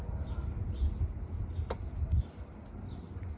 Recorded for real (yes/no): yes